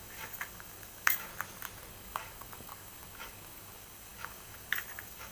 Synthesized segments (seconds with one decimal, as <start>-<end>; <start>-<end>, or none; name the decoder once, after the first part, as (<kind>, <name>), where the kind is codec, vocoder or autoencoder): 0.0-1.3 (codec, DAC); 1.9-5.3